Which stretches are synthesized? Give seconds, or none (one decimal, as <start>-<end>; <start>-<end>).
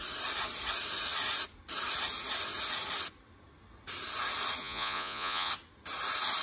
4.6-5.5